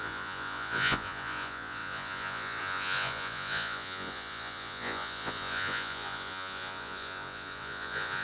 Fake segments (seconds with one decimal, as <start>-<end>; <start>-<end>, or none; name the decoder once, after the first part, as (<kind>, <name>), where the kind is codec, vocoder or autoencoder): 0.0-8.2 (vocoder, Vocos)